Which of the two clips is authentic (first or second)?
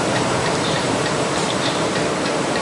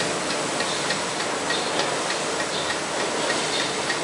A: second